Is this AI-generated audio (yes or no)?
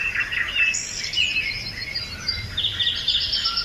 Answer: no